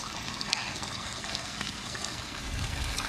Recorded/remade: remade